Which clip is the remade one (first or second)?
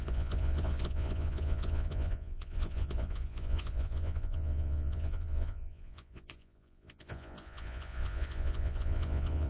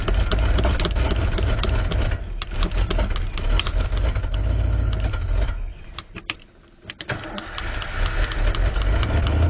first